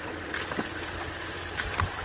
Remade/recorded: remade